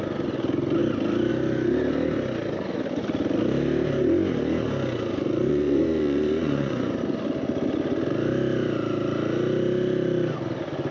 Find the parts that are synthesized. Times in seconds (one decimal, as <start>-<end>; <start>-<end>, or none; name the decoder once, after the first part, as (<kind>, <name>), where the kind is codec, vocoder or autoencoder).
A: 5.5-7.0 (vocoder, Vocos)